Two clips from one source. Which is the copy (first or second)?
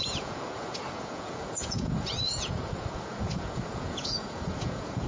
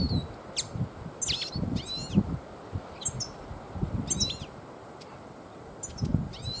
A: first